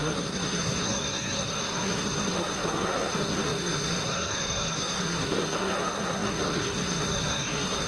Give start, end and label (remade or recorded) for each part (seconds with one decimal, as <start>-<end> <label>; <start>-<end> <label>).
0.0-7.9 remade